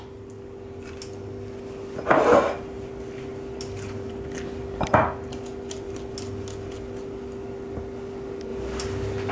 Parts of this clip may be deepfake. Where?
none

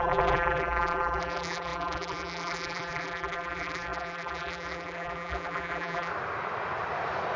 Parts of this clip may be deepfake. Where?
0.0-6.1 (vocoder, BigVGAN v2)

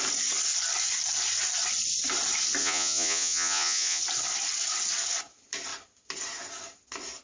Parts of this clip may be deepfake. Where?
2.6-4.0 (vocoder, Vocos)

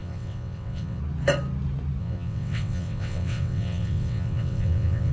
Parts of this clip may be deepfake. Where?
0.0-1.0 (vocoder, WaveNeXt); 2.0-5.1